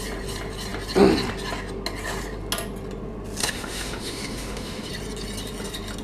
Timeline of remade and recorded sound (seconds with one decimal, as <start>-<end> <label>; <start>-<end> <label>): 0.0-3.4 recorded; 3.4-4.9 remade; 4.9-6.0 recorded